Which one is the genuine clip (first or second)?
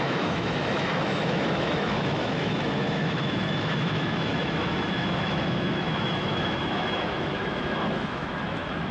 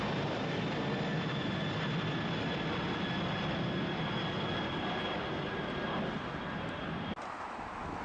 second